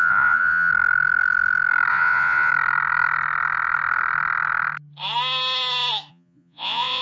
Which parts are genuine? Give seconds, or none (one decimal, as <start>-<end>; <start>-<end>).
0.7-1.9; 2.5-6.1